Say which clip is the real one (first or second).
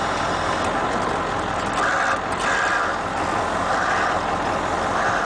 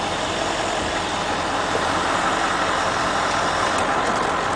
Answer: first